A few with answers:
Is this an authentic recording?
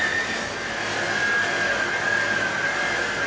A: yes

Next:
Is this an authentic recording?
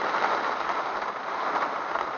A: yes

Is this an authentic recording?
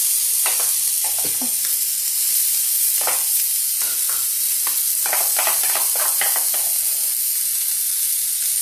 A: yes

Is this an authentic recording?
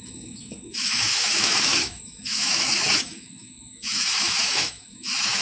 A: no